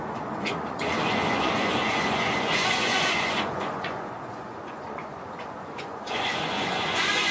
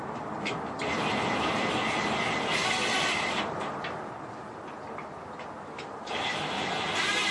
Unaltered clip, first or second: second